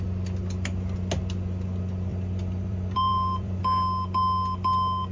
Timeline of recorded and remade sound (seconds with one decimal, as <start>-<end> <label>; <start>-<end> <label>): 0.0-2.1 recorded; 2.1-3.6 remade; 3.6-5.1 recorded